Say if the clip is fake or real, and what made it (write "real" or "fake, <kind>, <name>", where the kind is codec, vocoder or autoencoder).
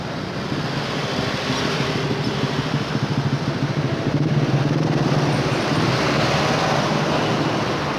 real